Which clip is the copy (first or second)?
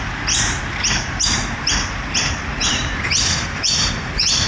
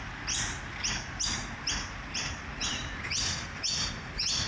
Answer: first